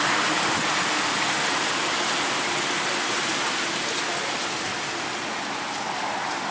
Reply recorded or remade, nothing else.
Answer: recorded